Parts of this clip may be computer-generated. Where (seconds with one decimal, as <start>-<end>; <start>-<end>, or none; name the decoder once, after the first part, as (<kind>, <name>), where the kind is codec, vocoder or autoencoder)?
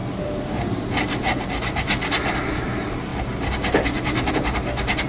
0.0-0.6 (vocoder, BigVGAN v2)